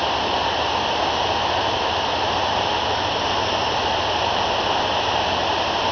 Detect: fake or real real